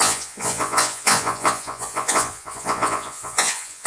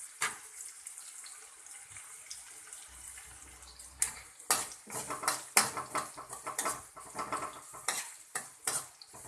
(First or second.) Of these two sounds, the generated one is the first